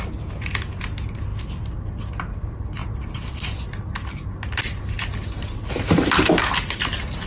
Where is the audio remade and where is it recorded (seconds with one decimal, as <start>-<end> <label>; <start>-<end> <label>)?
0.0-7.3 recorded